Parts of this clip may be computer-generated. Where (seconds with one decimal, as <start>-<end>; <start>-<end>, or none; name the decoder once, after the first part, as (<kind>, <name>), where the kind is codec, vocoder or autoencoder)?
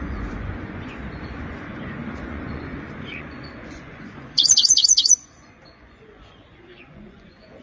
0.0-7.6 (vocoder, Vocos)